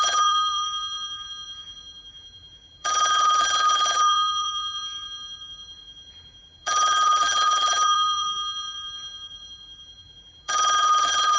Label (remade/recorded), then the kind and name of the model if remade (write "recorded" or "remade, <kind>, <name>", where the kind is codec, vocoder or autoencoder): remade, vocoder, BigVGAN v2